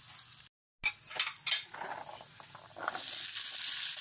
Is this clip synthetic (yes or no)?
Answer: no